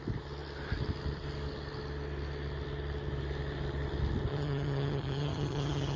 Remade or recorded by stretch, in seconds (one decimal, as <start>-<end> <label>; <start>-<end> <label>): 0.0-4.3 recorded; 4.3-6.0 remade